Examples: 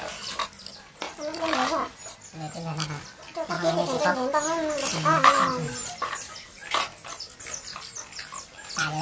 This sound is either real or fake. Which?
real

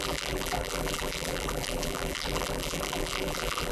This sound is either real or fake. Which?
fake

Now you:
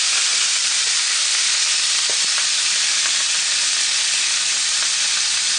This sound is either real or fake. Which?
fake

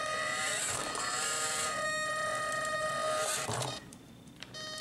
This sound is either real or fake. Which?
fake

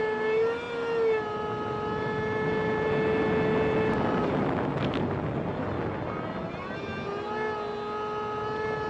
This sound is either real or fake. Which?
real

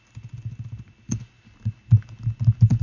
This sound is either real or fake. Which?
real